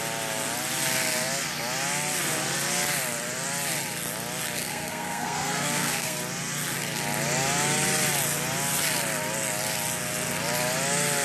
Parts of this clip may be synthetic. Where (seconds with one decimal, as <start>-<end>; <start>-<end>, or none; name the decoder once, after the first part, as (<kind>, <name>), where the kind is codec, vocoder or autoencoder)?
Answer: 4.6-6.2 (codec, SNAC)